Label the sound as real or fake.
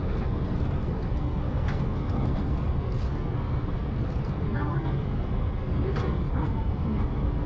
fake